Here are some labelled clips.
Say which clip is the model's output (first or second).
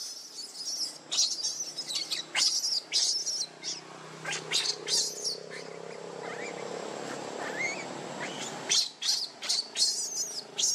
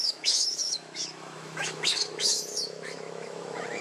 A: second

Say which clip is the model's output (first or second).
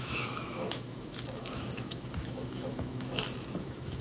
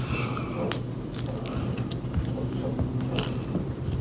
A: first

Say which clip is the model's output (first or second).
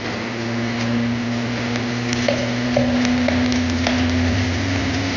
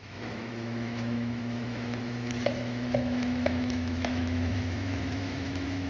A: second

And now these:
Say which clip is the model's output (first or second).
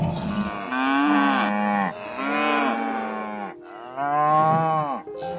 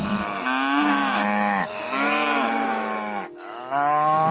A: second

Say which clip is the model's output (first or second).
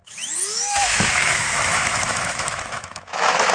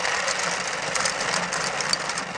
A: first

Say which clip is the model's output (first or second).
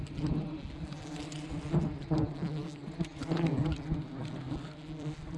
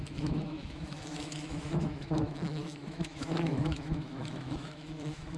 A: second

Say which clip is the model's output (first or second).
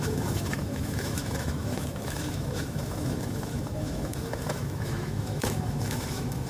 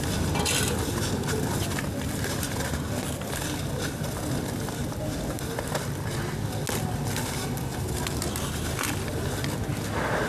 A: first